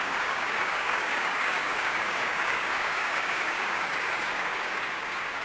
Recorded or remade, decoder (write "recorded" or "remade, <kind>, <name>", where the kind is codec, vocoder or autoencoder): remade, codec, DAC